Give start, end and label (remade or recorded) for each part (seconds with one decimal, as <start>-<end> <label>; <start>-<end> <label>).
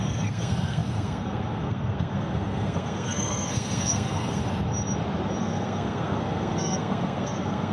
0.0-4.4 remade; 4.4-5.4 recorded; 5.4-7.7 remade